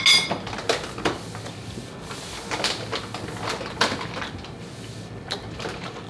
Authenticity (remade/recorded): recorded